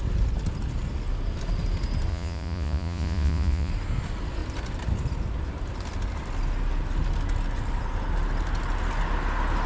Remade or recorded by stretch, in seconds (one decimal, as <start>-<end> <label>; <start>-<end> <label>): 0.0-2.1 recorded; 2.1-3.7 remade; 3.7-9.7 recorded